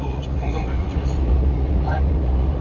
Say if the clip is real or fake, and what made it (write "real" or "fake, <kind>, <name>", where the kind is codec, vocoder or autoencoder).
fake, vocoder, Vocos